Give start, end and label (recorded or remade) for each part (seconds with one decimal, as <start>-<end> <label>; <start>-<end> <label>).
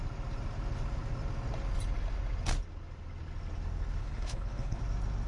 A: 0.0-4.0 recorded; 4.0-4.8 remade; 4.8-5.3 recorded